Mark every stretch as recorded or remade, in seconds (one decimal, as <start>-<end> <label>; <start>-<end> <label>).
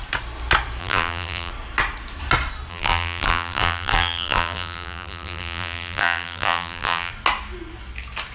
0.0-0.8 recorded; 0.8-1.5 remade; 1.5-2.7 recorded; 2.7-7.1 remade; 7.1-8.3 recorded